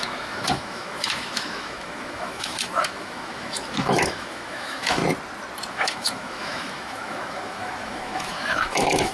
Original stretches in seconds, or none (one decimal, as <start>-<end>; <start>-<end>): 5.0-5.7